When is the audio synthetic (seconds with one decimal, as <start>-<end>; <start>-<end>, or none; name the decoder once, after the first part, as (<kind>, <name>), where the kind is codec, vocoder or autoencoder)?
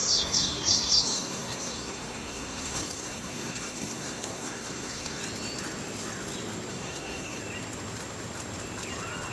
0.0-5.2 (codec, SNAC); 6.7-7.4